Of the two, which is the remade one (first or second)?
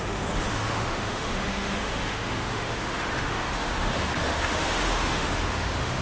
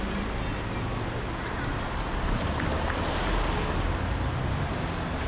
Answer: first